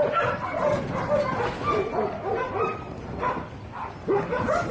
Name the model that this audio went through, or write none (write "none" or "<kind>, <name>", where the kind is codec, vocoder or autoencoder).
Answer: none